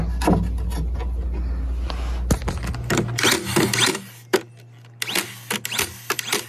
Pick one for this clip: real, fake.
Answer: real